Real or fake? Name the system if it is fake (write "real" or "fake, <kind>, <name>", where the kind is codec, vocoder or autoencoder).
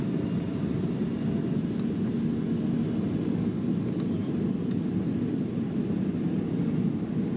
real